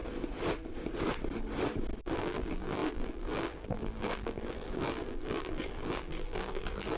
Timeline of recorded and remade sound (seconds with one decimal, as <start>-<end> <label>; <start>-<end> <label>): 0.0-2.0 recorded; 2.0-7.0 remade